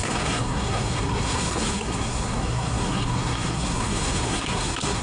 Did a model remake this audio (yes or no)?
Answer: yes